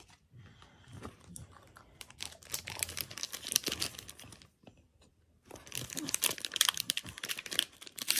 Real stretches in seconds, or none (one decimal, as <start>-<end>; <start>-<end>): 3.6-4.7